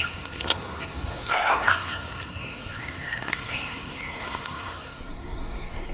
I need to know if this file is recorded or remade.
remade